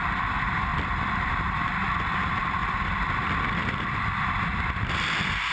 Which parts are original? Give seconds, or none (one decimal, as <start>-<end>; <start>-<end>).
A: 0.7-2.2